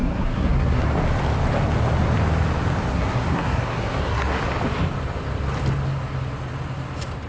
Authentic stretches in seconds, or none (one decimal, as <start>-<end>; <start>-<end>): 0.8-2.9; 4.4-7.3